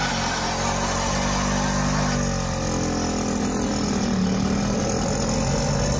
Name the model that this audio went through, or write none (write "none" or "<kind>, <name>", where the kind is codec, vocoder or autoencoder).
none